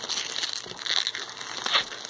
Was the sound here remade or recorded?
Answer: recorded